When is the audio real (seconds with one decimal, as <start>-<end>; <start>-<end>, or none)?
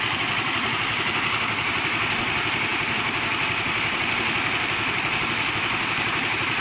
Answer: 0.0-6.6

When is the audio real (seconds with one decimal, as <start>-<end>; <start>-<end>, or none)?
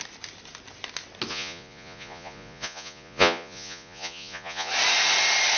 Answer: 0.0-1.3; 4.7-5.6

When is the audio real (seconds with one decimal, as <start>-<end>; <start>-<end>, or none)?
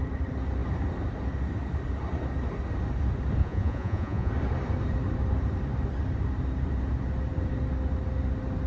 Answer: 0.0-3.4; 4.3-8.7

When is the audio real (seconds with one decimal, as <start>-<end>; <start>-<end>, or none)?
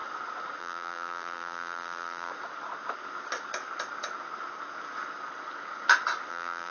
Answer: 0.0-0.6; 2.3-6.3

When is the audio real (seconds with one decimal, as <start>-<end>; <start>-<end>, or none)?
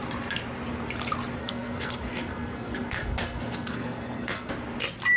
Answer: 0.0-1.4; 4.5-5.2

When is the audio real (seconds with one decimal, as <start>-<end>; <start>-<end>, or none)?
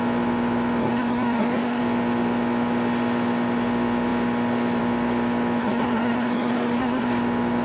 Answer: 0.0-0.8; 1.8-5.6; 7.1-7.6